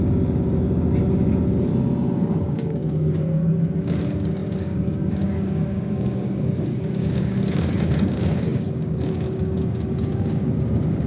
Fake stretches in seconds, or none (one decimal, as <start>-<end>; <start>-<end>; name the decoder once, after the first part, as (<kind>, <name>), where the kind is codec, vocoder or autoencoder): 0.0-1.7 (codec, DAC); 2.4-11.1